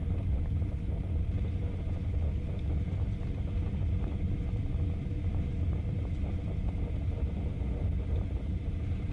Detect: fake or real real